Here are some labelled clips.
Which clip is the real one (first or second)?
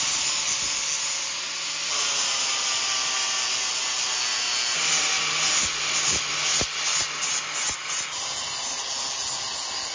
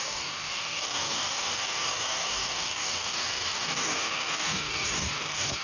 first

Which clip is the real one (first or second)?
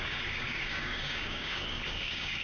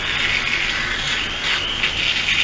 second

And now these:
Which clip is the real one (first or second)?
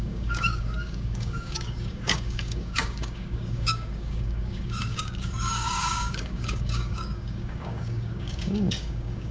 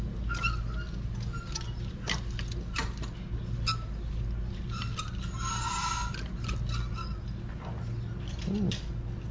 second